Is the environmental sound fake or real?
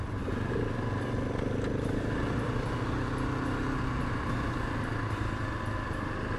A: real